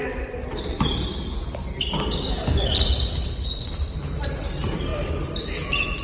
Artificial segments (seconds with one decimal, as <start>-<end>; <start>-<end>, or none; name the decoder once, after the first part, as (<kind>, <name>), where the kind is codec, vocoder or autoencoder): 3.6-6.0 (vocoder, BigVGAN v2)